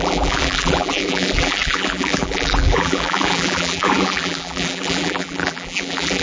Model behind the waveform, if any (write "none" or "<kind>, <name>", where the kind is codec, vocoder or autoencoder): vocoder, BigVGAN v2